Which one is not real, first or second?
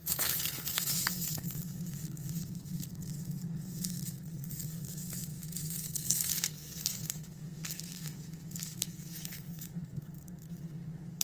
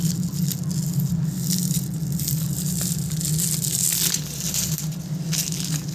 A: first